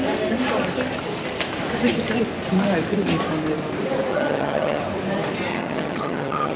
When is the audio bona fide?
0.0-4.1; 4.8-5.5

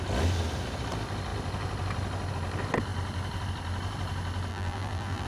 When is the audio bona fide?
0.0-4.5

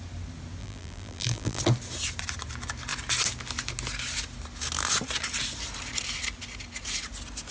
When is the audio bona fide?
0.0-0.6; 1.6-7.5

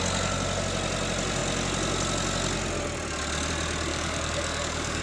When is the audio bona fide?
0.0-3.9

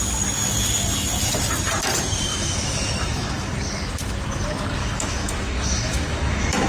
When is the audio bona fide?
0.0-2.3; 3.5-4.8

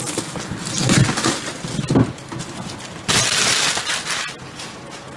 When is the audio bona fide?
0.0-5.2